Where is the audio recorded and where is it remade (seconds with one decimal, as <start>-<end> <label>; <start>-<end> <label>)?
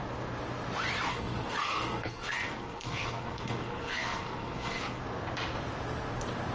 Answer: 0.0-1.1 recorded; 1.1-5.0 remade; 5.0-6.5 recorded